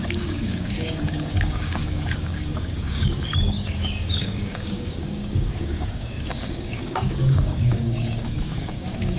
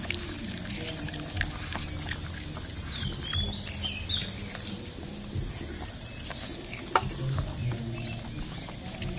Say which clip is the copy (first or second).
first